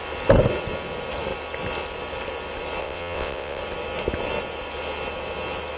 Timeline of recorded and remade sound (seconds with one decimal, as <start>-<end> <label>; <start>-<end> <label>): 0.0-2.8 recorded; 2.8-3.6 remade; 3.6-5.8 recorded